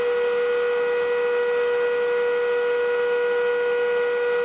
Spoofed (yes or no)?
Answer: no